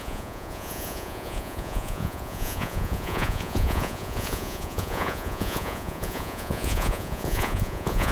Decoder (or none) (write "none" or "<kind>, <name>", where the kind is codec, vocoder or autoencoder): vocoder, Vocos